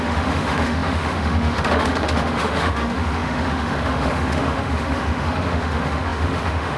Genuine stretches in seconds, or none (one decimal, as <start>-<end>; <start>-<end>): none